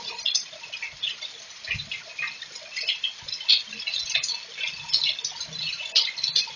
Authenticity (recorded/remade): recorded